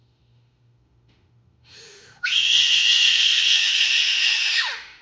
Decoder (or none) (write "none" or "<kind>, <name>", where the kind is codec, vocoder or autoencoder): autoencoder, DAC-VAE